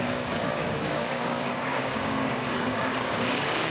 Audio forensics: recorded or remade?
remade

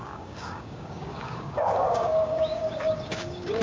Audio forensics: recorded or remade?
remade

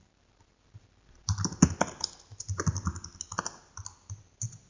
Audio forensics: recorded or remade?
recorded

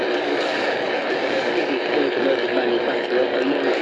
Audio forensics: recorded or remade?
remade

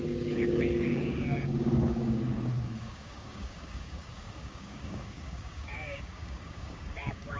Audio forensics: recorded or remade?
remade